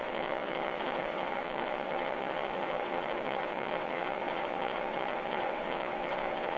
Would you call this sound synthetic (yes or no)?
yes